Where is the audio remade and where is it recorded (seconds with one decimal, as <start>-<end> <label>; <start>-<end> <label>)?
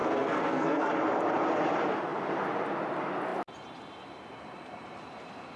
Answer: 0.0-0.9 remade; 0.9-5.6 recorded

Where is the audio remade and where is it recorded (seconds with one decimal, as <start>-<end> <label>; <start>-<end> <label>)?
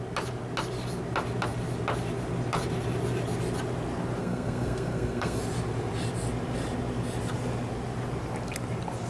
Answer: 0.0-4.2 recorded; 4.2-5.4 remade; 5.4-9.1 recorded